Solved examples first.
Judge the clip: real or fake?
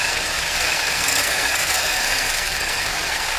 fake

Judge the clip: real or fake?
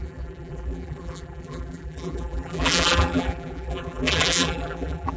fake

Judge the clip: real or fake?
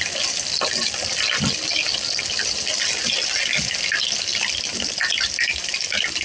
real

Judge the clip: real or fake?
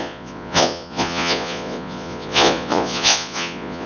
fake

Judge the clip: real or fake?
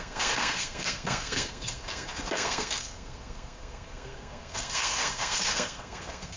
fake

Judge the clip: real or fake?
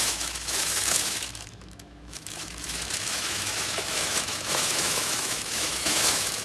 fake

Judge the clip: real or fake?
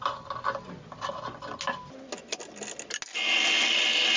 real